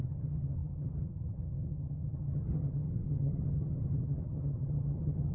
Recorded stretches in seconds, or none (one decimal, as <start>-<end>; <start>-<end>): none

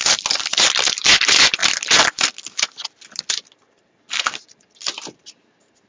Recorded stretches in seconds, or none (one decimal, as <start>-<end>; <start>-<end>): 0.0-5.9

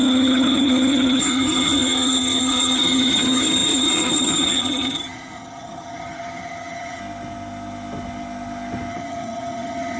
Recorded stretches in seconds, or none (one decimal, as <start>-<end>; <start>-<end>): 7.0-8.9